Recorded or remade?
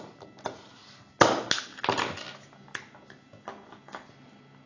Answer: recorded